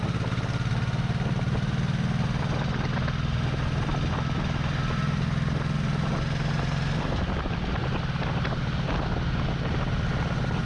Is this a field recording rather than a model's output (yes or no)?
yes